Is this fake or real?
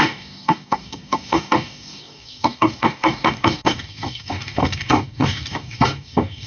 fake